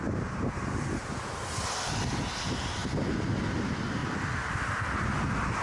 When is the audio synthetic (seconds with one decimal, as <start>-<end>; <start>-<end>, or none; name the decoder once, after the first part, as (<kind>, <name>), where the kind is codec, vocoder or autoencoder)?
none